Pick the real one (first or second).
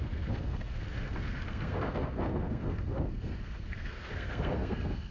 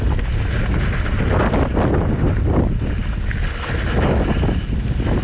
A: second